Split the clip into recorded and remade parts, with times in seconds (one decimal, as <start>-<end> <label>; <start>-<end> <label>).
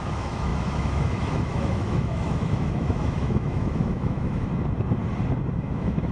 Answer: 0.0-4.5 remade; 4.5-5.6 recorded; 5.6-6.1 remade